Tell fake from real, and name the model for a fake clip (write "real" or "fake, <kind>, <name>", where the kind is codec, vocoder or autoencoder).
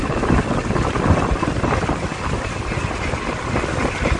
real